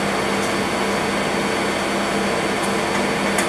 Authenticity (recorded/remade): recorded